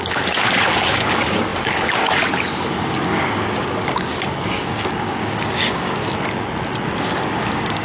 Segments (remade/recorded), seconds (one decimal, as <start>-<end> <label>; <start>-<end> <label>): 0.0-6.0 remade; 6.0-7.0 recorded; 7.0-7.8 remade